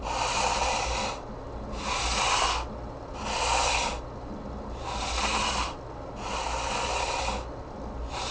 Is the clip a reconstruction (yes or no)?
no